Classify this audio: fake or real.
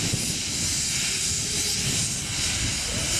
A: real